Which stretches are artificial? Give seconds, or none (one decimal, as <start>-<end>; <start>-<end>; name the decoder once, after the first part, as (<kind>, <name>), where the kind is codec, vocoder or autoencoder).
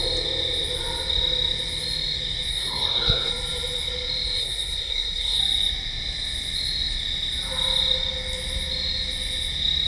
2.5-3.3 (codec, SNAC); 4.4-5.4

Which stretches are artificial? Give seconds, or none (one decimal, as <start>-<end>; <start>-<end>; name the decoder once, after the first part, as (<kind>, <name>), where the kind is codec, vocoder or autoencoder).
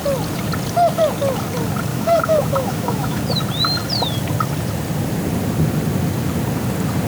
1.9-3.2 (autoencoder, DAC-VAE)